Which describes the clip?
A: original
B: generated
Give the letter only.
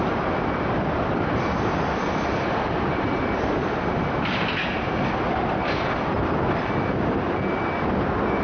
B